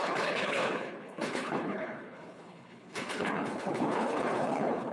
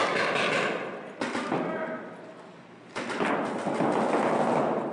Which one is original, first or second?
second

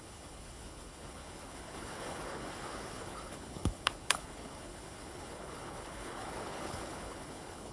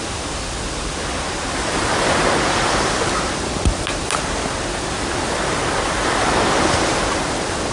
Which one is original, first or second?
second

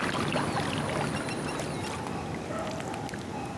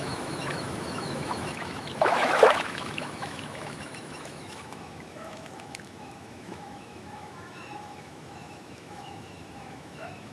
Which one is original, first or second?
first